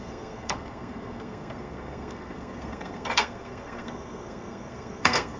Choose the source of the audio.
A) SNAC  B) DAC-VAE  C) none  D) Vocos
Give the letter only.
A